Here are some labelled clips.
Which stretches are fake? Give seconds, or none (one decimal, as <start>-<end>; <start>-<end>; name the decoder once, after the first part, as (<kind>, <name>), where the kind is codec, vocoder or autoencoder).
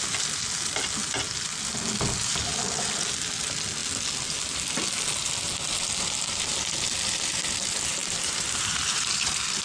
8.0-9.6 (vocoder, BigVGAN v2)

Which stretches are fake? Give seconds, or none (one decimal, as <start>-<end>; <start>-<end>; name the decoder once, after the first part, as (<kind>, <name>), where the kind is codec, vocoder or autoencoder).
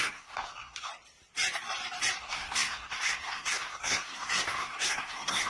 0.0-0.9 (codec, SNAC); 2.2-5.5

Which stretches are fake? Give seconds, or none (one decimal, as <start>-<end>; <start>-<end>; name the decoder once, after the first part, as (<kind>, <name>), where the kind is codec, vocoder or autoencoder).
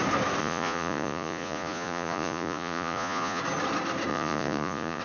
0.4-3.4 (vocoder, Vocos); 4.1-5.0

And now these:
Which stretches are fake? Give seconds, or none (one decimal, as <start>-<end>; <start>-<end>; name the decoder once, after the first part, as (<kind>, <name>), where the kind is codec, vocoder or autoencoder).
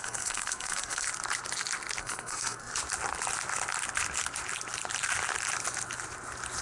0.0-1.1 (codec, SNAC); 2.0-2.7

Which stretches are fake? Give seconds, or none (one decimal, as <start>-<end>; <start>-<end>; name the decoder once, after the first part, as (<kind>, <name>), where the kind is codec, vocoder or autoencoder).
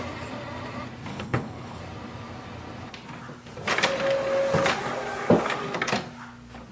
1.1-1.8 (codec, HILCodec)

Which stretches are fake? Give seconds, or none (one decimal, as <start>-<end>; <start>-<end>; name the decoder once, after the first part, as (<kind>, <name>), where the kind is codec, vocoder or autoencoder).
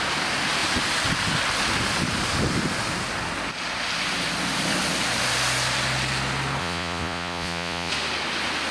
6.6-7.9 (vocoder, Vocos)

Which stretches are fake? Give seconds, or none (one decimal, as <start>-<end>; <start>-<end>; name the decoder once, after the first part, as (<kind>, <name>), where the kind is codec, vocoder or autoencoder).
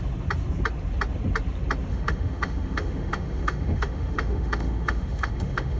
1.9-5.8 (autoencoder, DAC-VAE)